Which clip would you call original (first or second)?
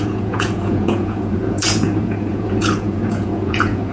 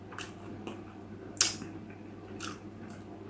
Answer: second